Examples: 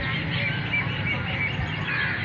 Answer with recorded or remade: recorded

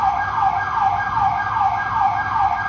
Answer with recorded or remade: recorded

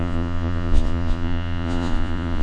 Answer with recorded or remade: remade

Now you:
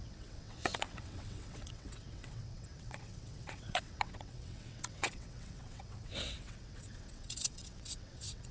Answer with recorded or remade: remade